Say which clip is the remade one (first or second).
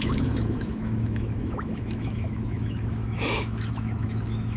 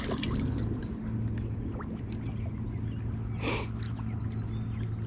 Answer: first